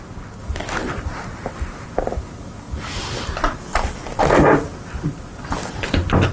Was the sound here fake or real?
real